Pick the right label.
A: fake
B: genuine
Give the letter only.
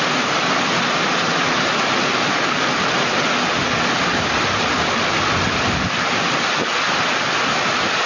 B